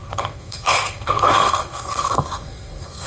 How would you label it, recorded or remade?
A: remade